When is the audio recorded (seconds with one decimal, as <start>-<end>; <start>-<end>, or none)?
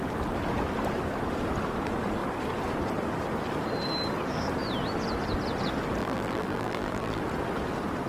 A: 0.0-6.0; 7.2-8.1